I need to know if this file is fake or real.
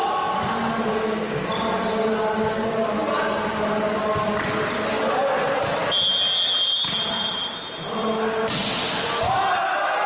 real